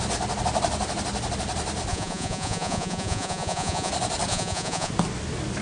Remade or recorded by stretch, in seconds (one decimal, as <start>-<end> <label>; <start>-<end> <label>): 0.0-1.9 recorded; 1.9-3.9 remade; 3.9-4.3 recorded; 4.3-4.9 remade; 4.9-5.6 recorded